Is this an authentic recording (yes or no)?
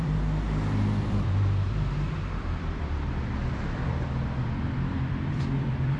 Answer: no